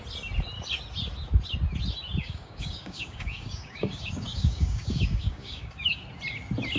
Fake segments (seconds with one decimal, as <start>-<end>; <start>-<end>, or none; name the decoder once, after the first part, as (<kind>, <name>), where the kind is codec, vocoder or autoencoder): 2.2-6.0 (codec, DAC)